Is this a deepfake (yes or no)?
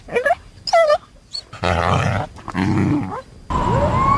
no